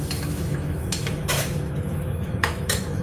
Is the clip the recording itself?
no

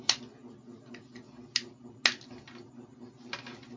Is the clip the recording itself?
yes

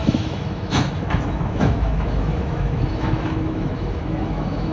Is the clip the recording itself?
no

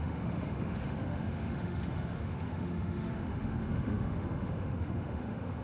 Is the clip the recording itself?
no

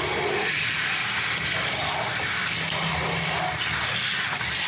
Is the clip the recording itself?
yes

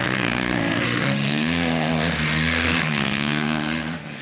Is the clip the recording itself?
no